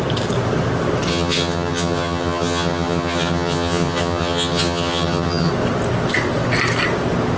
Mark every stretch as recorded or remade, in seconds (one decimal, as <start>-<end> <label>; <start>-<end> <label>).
0.0-1.1 recorded; 1.1-5.5 remade; 5.5-7.4 recorded